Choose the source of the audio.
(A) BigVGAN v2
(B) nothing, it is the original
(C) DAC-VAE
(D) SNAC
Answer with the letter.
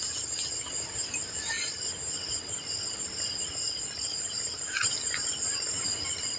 B